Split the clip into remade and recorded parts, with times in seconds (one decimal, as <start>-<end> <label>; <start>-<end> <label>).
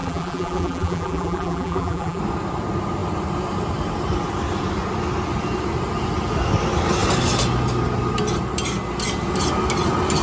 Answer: 0.0-2.2 remade; 2.2-10.2 recorded